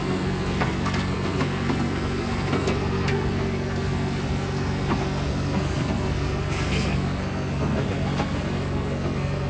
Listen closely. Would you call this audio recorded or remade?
remade